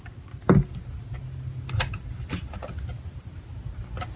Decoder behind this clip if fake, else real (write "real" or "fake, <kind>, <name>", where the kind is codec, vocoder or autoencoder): real